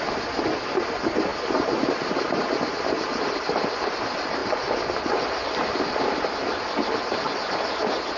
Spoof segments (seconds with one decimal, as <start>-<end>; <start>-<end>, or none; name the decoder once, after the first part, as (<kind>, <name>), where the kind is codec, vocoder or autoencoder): none